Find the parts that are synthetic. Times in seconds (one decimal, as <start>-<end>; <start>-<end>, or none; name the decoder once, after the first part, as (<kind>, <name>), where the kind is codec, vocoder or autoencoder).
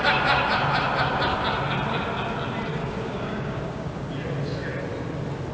2.7-4.1 (codec, DAC)